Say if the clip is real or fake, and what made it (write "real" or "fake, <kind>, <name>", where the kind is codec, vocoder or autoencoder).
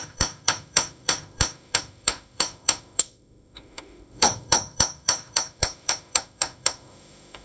fake, autoencoder, DAC-VAE